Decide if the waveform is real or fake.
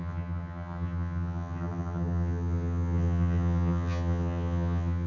fake